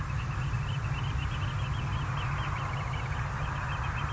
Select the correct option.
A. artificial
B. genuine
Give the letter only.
B